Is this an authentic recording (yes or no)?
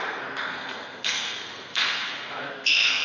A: no